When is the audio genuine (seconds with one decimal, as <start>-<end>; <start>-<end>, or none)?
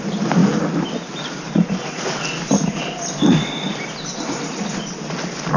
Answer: 0.0-2.6; 3.9-5.6